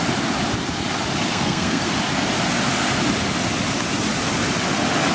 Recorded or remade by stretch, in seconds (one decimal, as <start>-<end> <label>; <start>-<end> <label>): 0.0-1.3 recorded; 1.3-1.9 remade; 1.9-5.1 recorded